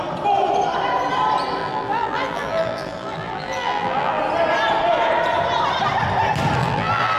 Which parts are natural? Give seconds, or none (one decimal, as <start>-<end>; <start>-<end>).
0.0-1.6; 4.2-6.6